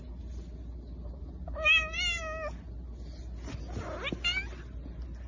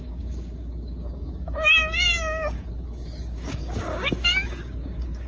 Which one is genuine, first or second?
first